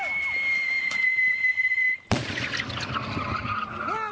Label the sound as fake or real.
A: real